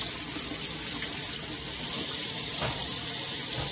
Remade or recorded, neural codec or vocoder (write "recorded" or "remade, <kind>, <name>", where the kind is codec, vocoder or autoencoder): recorded